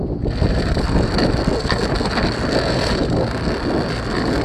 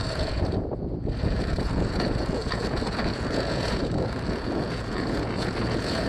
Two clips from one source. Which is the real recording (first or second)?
first